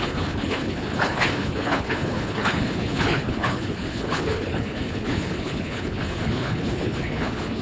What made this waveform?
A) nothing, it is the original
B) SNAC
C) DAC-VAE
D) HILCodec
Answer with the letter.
D